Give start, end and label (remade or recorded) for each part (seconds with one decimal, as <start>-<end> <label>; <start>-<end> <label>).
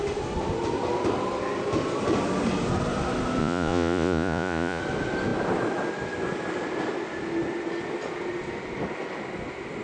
0.0-3.4 recorded; 3.4-4.8 remade; 4.8-9.8 recorded